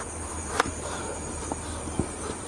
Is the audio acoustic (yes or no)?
yes